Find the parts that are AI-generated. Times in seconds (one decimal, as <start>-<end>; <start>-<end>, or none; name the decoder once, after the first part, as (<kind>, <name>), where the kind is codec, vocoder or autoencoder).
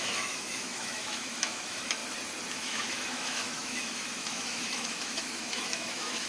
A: 0.0-2.0 (autoencoder, DAC-VAE); 2.5-6.3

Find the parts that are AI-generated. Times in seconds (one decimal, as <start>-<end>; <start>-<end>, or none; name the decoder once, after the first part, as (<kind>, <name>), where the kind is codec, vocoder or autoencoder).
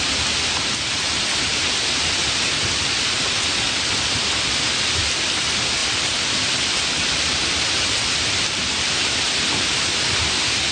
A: 1.5-2.8 (vocoder, BigVGAN v2); 5.8-9.8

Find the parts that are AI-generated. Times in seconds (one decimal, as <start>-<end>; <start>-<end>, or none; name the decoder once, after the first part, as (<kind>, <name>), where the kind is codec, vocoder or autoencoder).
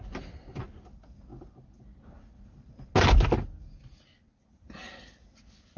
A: none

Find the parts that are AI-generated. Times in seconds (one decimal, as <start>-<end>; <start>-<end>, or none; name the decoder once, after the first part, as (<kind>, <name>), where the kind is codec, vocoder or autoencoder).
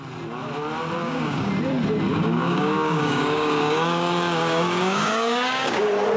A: 1.0-1.5 (codec, DAC); 2.1-5.8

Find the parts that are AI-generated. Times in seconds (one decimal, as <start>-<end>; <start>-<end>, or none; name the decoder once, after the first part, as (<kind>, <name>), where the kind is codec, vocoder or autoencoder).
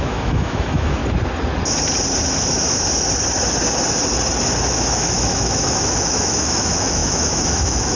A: 0.0-1.0 (autoencoder, DAC-VAE); 4.7-8.0